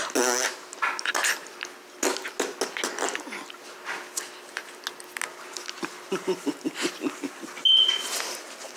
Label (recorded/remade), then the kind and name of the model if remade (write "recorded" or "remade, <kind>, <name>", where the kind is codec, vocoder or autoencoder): recorded